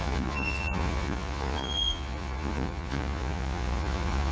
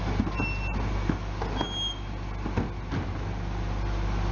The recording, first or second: second